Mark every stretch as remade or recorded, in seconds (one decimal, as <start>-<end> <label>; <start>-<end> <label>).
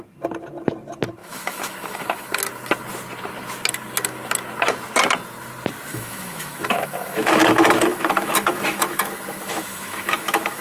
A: 0.0-1.2 recorded; 1.2-2.4 remade; 2.4-5.9 recorded; 5.9-10.6 remade